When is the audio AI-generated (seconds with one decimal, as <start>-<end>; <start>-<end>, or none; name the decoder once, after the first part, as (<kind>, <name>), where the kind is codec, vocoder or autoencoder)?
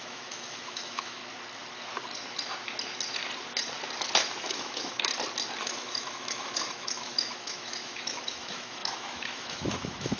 0.0-1.2 (autoencoder, DAC-VAE); 4.4-5.1; 5.6-10.2